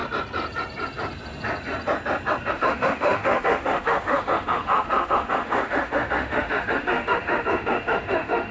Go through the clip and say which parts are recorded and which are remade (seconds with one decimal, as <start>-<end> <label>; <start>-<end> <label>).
0.0-2.5 recorded; 2.5-8.5 remade